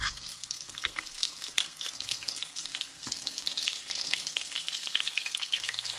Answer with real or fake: fake